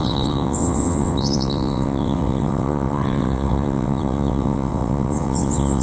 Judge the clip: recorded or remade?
remade